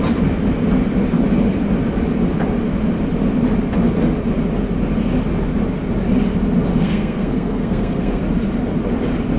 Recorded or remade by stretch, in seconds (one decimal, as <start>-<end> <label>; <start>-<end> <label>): 0.0-6.7 recorded; 6.7-8.2 remade; 8.2-9.4 recorded